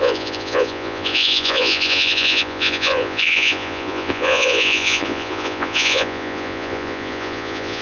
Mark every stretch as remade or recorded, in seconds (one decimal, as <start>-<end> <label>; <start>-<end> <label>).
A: 0.0-7.8 remade